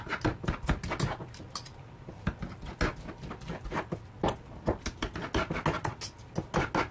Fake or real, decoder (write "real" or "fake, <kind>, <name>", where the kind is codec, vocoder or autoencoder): real